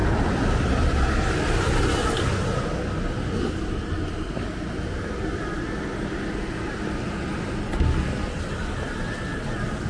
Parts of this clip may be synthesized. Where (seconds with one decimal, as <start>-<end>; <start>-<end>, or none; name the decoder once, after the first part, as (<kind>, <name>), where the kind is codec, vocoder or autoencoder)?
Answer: none